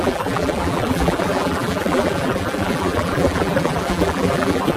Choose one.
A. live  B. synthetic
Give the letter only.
B